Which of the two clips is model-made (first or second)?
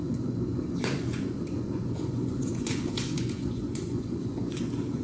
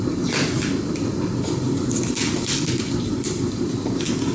first